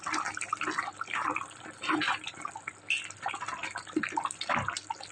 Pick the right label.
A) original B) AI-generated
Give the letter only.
A